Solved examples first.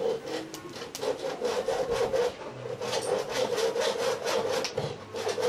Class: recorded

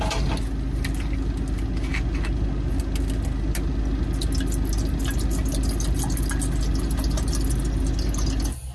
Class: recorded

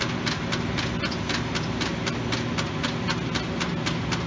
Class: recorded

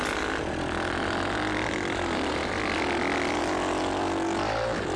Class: recorded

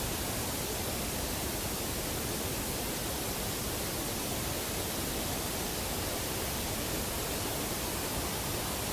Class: recorded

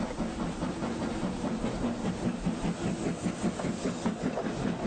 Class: recorded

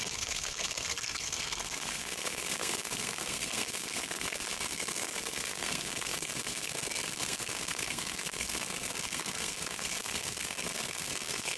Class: remade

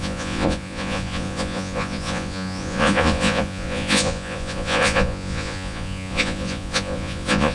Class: remade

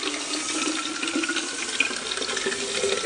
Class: recorded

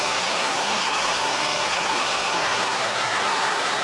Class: remade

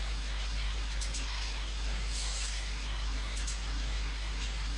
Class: remade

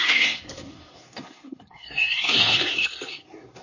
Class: remade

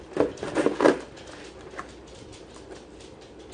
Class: recorded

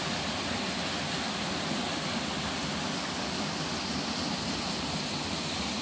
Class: recorded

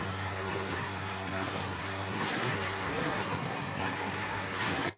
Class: remade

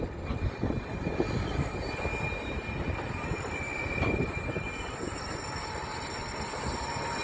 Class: recorded